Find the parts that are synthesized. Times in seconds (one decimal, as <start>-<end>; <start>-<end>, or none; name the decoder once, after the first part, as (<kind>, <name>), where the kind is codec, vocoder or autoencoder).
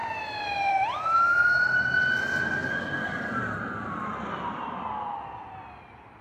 0.0-1.0 (vocoder, BigVGAN v2); 2.6-5.5